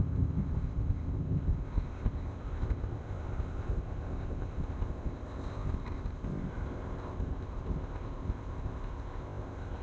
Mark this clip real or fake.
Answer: fake